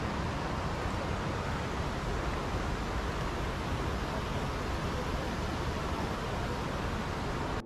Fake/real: real